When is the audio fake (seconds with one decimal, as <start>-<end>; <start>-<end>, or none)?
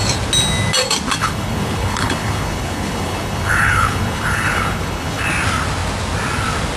1.2-5.3